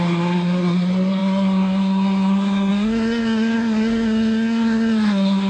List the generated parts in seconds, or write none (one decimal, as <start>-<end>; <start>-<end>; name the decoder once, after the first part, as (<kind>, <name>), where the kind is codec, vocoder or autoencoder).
0.0-5.5 (codec, SNAC)